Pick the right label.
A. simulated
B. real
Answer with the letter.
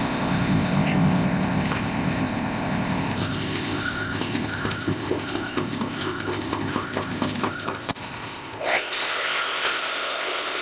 A